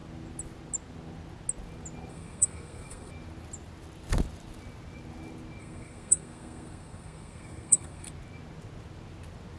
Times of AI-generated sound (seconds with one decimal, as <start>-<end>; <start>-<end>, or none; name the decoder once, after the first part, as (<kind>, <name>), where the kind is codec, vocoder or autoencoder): 2.1-3.1 (codec, SNAC); 5.6-8.1